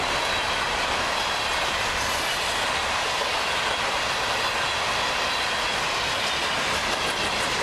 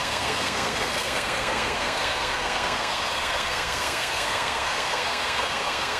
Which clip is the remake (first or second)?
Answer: second